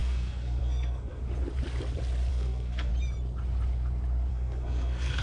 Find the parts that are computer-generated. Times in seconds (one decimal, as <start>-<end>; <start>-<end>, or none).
0.0-1.2; 2.3-2.9; 4.3-5.2